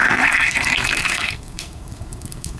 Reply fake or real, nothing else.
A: fake